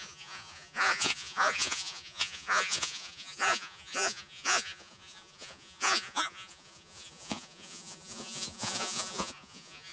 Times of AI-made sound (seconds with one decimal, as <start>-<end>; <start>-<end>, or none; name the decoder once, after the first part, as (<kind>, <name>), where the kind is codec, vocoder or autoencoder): 0.0-9.9 (vocoder, Vocos)